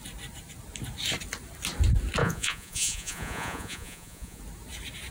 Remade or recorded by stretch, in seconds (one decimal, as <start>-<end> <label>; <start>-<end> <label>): 0.0-2.2 recorded; 2.2-4.4 remade; 4.4-5.1 recorded